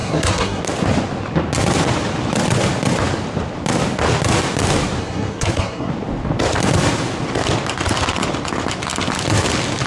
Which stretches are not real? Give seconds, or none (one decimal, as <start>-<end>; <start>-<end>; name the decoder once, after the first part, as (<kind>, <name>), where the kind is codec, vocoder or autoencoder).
0.0-0.6 (codec, SNAC); 5.0-5.9